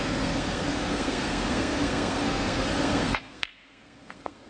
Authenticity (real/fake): fake